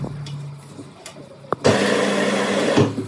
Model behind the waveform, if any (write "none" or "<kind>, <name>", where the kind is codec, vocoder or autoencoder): none